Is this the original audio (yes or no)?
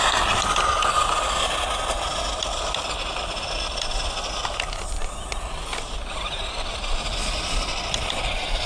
yes